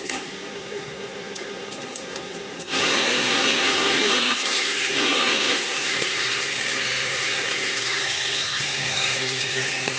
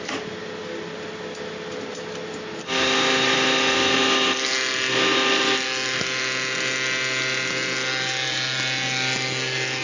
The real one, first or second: second